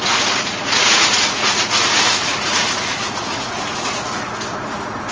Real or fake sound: fake